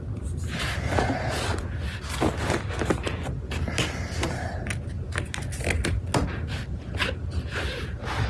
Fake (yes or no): no